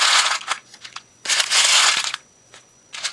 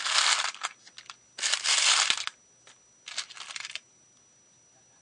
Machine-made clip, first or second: first